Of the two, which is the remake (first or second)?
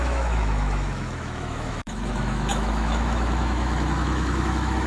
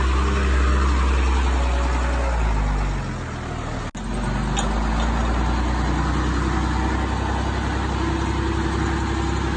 first